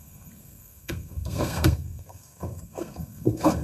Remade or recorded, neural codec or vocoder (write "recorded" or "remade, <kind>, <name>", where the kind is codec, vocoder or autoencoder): remade, codec, SNAC